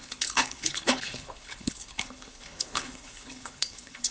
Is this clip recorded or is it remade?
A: remade